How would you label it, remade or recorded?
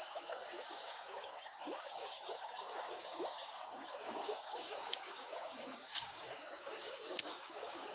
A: remade